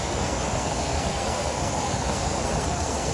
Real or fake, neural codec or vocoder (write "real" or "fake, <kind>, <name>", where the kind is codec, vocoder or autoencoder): fake, codec, SNAC